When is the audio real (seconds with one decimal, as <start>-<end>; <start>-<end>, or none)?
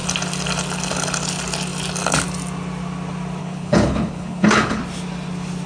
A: 0.0-3.4; 4.8-5.7